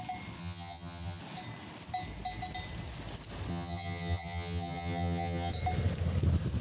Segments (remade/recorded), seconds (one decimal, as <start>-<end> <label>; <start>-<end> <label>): 0.0-0.4 recorded; 0.4-1.2 remade; 1.2-3.5 recorded; 3.5-5.5 remade; 5.5-6.6 recorded